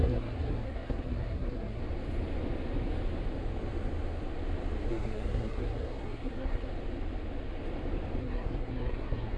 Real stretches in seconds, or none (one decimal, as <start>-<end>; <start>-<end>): 1.8-4.9; 6.7-8.2